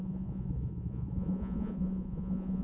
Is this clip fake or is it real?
fake